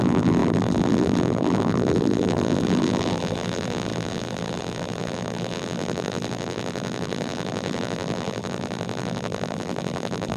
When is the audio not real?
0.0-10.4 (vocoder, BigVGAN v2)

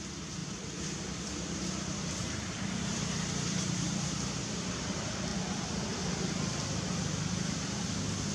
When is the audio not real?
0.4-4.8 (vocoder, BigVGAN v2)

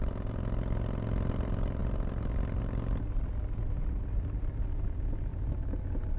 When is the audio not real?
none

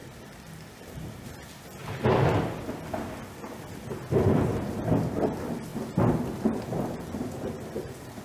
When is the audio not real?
0.0-1.8 (vocoder, BigVGAN v2); 4.1-5.7; 6.9-8.2

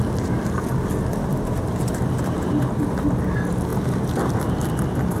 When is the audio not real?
1.3-2.7 (vocoder, BigVGAN v2)